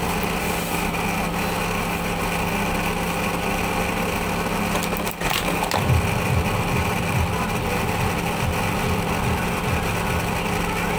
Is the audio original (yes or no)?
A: yes